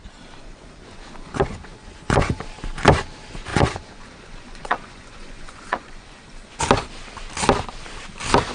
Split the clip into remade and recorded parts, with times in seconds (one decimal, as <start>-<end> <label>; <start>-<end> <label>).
0.0-0.4 recorded; 0.4-2.4 remade; 2.4-3.5 recorded; 3.5-6.6 remade; 6.6-8.5 recorded